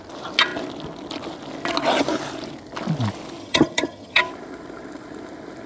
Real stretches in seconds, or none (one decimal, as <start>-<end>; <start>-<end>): 0.0-3.4; 4.2-5.7